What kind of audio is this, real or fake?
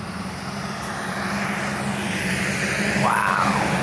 real